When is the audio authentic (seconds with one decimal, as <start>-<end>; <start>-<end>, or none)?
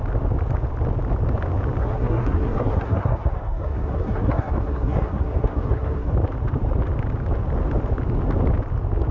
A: 0.0-1.8; 6.1-9.1